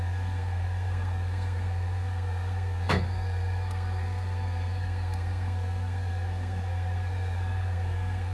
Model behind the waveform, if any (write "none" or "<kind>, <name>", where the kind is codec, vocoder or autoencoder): codec, SNAC